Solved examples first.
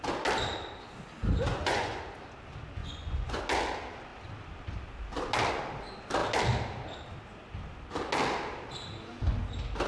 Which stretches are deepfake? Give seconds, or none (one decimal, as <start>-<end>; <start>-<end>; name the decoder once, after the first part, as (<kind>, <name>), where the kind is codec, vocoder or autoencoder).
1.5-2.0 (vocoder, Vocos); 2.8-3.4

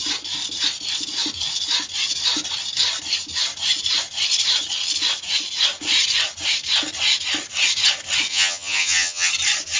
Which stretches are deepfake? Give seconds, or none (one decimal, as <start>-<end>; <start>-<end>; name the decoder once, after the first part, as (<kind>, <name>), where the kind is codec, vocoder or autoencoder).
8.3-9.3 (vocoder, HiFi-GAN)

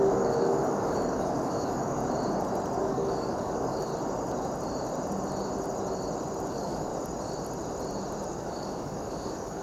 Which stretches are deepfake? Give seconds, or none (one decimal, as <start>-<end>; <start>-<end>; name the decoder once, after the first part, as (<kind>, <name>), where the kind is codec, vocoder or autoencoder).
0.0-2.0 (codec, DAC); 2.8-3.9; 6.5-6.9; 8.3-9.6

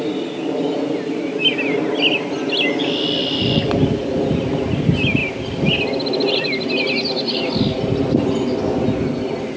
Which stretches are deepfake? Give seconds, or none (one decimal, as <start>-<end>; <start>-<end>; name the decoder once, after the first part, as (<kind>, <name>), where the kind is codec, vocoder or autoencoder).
none

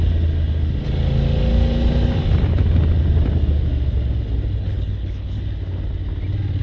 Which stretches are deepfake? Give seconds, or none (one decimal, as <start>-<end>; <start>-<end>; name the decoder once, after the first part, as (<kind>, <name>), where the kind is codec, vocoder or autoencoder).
4.6-5.4 (codec, HILCodec)